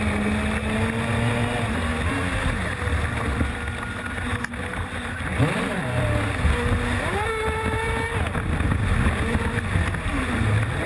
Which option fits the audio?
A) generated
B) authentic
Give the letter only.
B